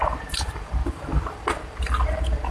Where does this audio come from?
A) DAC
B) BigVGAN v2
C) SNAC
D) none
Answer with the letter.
B